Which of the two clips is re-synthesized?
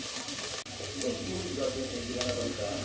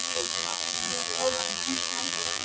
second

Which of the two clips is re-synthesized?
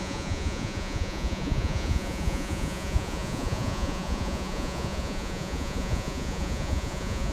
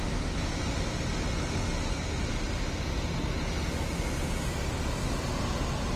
first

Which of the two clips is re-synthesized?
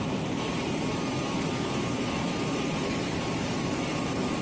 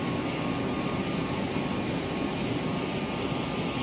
first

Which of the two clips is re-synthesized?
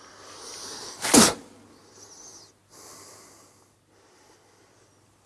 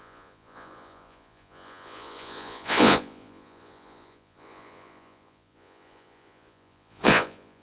second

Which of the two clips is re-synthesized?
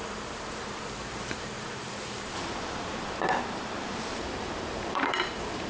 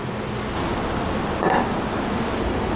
first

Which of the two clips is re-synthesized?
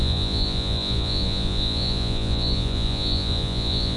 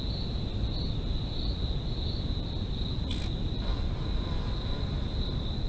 first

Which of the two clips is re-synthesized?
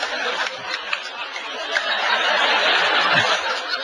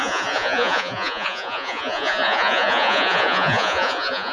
second